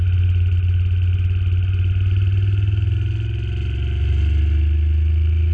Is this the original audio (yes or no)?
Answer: yes